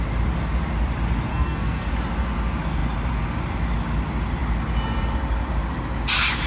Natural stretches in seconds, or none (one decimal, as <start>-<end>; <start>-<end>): 0.0-1.3; 1.9-6.5